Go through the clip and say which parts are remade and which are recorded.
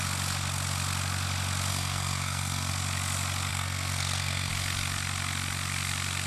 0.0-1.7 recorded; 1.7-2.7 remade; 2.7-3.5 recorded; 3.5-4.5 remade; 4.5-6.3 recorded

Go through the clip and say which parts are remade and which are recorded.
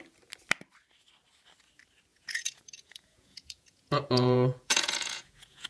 0.0-2.1 recorded; 2.1-5.7 remade